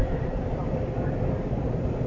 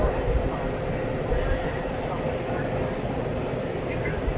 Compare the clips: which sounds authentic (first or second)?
second